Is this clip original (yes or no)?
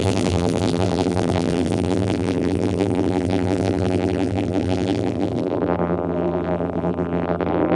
no